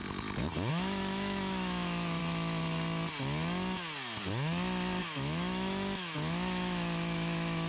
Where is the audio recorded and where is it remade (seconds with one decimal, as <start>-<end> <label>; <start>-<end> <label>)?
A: 0.0-0.7 recorded; 0.7-2.2 remade; 2.2-5.0 recorded; 5.0-7.7 remade